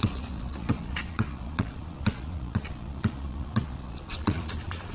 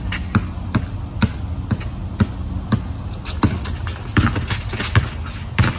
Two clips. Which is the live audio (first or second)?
second